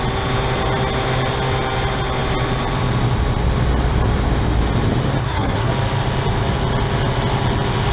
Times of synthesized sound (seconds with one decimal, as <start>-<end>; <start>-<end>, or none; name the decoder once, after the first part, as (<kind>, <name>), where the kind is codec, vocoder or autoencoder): 5.2-5.7 (codec, SNAC)